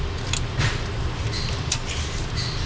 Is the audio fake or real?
real